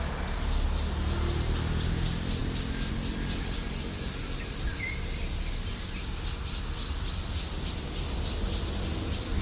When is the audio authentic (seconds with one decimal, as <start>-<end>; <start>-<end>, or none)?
0.0-9.4